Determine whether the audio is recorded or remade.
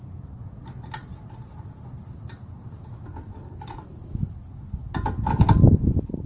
recorded